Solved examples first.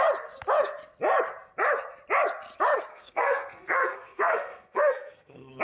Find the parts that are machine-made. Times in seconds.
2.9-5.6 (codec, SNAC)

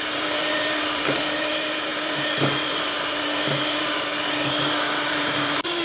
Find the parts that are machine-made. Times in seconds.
0.0-4.1 (vocoder, BigVGAN v2); 5.1-5.8

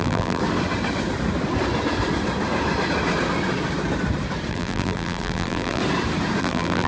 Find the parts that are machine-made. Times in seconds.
0.0-0.4 (vocoder, BigVGAN v2); 4.5-5.8; 6.4-6.9

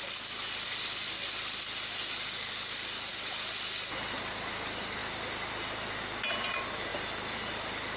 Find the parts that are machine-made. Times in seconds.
none

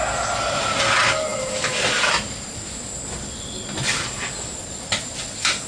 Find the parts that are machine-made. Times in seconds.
none

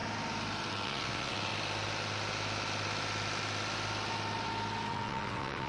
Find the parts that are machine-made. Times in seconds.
0.7-1.5 (vocoder, WaveNeXt); 4.9-5.7